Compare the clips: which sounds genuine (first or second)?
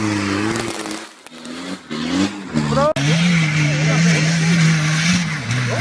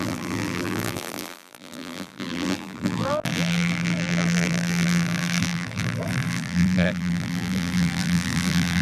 first